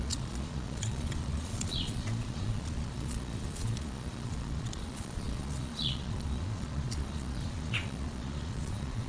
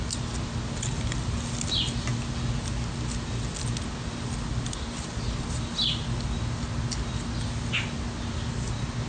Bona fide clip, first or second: second